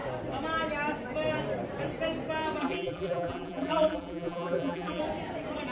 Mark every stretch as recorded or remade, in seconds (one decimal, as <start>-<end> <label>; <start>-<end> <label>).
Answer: 0.0-2.6 recorded; 2.6-5.0 remade; 5.0-5.7 recorded